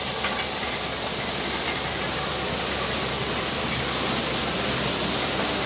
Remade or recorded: recorded